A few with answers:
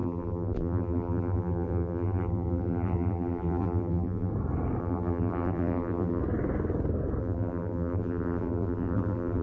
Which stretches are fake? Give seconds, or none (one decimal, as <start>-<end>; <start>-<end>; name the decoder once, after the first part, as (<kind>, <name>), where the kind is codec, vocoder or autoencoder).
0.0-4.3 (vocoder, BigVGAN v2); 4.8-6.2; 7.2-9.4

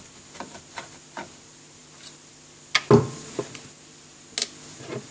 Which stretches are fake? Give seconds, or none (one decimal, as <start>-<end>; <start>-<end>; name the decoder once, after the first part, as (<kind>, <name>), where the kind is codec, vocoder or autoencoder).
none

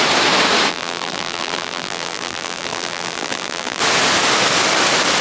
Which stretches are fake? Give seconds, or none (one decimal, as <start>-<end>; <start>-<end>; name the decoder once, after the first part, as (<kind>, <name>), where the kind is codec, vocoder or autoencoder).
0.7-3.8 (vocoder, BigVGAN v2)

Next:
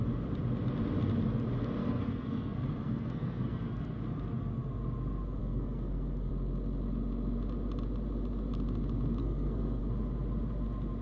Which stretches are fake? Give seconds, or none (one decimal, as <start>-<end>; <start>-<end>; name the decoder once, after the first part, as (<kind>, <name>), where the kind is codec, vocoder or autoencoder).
1.8-4.0 (codec, SNAC); 5.4-6.3; 9.2-9.8